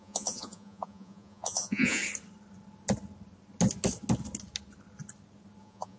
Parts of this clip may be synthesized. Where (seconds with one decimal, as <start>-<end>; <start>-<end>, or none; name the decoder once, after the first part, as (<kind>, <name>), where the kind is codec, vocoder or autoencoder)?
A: 0.0-2.0 (vocoder, Vocos); 5.6-6.0